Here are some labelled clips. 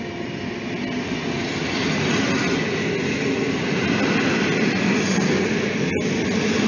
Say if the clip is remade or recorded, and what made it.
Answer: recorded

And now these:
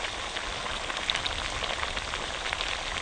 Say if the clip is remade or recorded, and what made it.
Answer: recorded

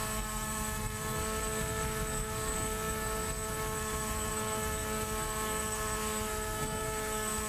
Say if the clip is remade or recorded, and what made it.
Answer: remade, codec, SNAC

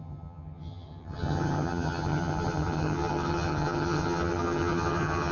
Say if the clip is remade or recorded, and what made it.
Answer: remade, vocoder, HiFi-GAN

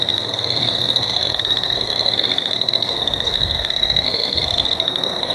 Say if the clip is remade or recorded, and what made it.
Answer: remade, codec, SNAC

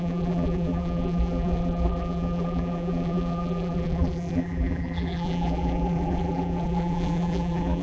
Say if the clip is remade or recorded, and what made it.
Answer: remade, vocoder, BigVGAN v2